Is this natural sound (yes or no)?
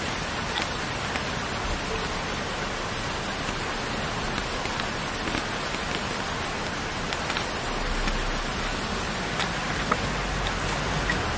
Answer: yes